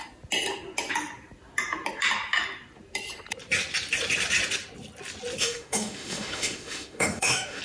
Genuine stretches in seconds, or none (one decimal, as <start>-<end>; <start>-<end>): 0.0-5.4